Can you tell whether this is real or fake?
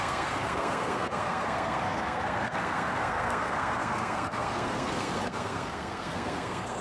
fake